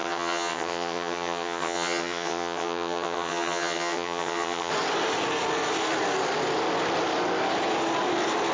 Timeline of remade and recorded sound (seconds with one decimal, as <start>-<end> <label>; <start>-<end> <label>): 0.0-4.7 remade; 4.7-8.5 recorded